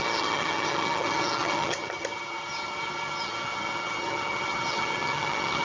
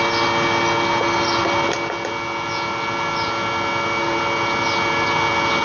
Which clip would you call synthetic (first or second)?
first